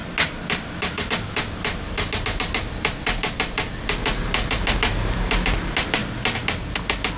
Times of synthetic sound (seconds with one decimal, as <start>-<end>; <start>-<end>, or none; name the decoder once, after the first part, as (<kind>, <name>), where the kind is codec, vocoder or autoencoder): none